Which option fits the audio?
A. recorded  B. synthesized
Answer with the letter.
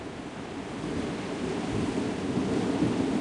A